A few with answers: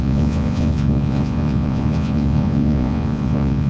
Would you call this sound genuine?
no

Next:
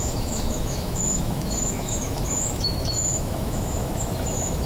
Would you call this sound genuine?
no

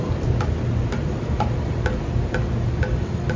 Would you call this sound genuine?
yes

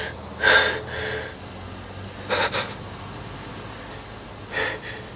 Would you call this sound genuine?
yes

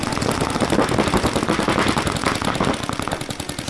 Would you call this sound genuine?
yes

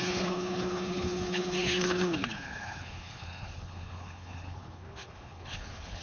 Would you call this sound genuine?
no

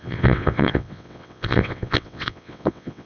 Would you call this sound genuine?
no